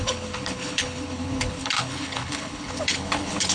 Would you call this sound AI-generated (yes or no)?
yes